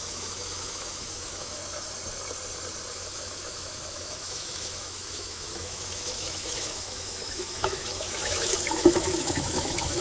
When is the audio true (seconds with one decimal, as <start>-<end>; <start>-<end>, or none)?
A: 1.6-2.9

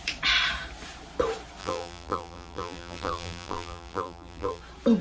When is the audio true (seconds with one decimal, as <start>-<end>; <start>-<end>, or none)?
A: 0.0-1.6; 4.6-5.0

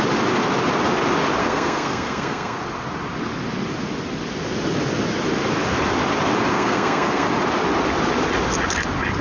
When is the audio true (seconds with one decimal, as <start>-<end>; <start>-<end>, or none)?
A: 0.0-1.4; 2.6-6.5; 7.3-9.2

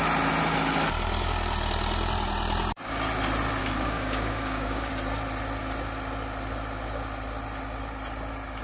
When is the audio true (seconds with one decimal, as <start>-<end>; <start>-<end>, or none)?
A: 0.0-3.6; 4.9-8.6